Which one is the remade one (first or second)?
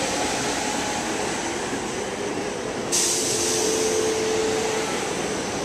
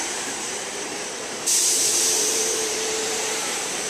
second